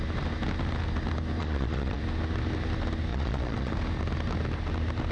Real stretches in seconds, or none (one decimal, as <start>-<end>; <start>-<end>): 0.0-1.4; 2.0-3.1; 3.7-5.1